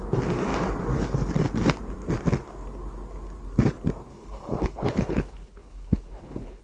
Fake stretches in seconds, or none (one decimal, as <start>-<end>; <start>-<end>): 4.1-6.6